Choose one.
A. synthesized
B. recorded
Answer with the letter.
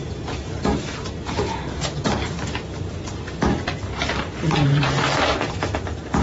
A